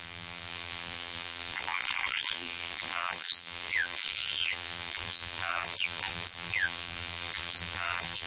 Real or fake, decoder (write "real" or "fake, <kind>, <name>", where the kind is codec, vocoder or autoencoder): fake, vocoder, BigVGAN v2